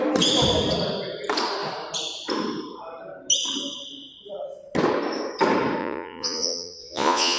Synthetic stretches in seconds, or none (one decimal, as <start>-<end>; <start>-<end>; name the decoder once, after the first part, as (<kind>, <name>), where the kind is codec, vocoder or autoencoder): 5.8-7.4 (vocoder, Vocos)